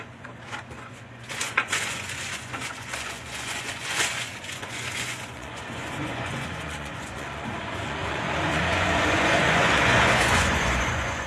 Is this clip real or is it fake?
fake